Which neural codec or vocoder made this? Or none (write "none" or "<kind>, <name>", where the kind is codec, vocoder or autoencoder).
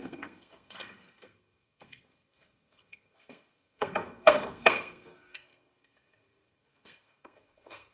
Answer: codec, SNAC